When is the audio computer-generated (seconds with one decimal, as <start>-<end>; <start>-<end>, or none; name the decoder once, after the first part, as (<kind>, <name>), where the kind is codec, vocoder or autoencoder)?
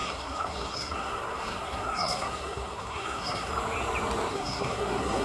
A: 0.0-3.5 (codec, SNAC); 4.3-5.2